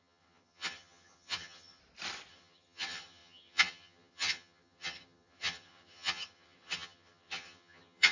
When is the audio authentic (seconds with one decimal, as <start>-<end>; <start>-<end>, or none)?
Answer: 1.8-2.3